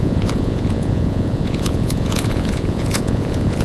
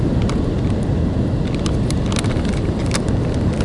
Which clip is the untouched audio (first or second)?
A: second